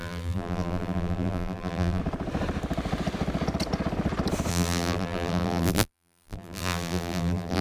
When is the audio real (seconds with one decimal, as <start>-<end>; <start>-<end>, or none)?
2.0-4.5